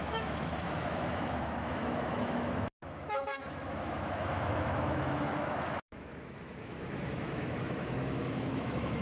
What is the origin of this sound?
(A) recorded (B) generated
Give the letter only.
B